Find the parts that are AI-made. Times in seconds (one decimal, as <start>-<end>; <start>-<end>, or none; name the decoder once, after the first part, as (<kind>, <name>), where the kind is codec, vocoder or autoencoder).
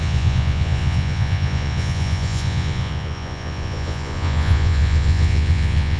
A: 0.0-6.0 (vocoder, Vocos)